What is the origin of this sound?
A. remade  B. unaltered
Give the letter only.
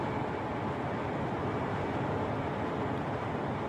B